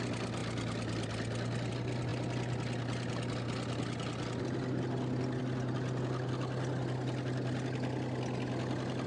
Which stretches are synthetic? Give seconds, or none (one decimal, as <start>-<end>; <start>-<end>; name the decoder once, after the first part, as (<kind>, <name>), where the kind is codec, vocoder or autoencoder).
none